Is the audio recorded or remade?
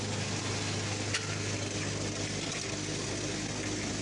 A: recorded